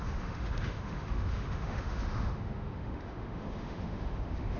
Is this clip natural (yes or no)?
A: no